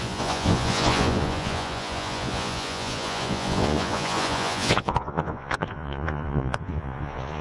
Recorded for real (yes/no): no